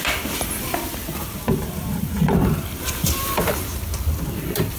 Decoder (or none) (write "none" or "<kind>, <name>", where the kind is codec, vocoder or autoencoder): vocoder, BigVGAN v2